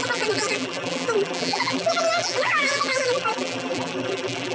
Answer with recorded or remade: remade